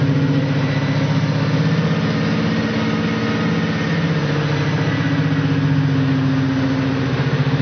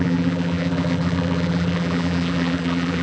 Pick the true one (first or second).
first